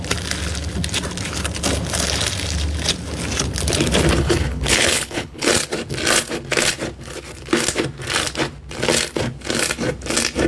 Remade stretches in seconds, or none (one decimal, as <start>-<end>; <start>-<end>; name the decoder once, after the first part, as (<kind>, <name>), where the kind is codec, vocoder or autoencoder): 4.2-5.5 (codec, HILCodec)